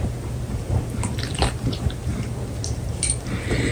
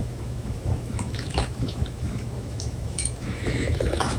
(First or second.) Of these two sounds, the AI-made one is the second